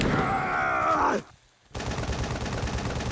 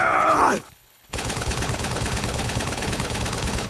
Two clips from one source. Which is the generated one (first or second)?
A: second